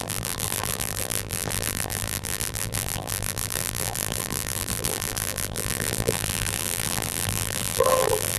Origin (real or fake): fake